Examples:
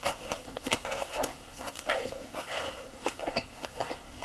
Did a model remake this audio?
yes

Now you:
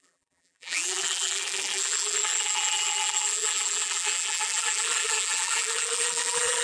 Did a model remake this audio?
yes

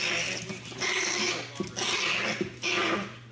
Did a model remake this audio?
no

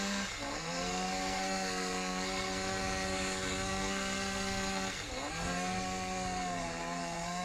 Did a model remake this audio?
yes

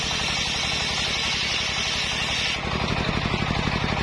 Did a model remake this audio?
no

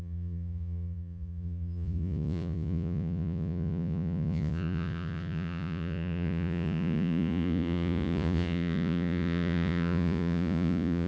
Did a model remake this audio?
yes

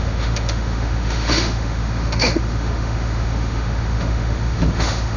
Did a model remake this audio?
yes